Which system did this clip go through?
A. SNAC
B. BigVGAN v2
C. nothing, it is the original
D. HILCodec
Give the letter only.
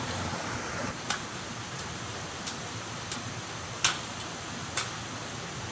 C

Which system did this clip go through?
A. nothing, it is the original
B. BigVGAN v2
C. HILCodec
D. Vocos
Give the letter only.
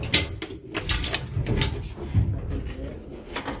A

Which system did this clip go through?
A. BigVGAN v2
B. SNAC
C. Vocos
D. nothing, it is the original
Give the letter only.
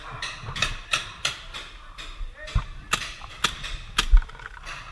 D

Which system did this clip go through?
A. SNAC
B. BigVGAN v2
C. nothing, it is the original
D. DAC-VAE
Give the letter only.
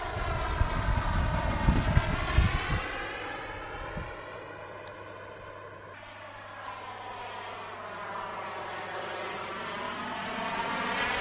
C